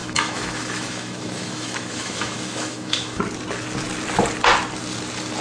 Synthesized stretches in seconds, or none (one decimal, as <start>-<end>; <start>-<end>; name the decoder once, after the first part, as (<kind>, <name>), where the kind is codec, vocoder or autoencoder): 0.0-3.2 (autoencoder, DAC-VAE)